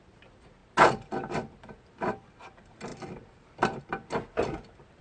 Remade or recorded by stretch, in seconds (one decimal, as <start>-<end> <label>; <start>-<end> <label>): 0.0-5.0 recorded